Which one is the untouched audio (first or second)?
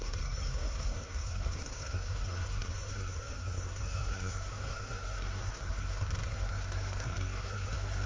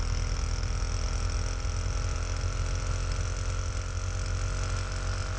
second